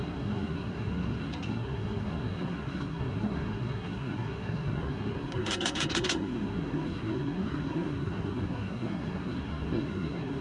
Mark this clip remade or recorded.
remade